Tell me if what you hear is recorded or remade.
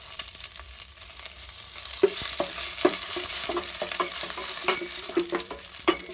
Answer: remade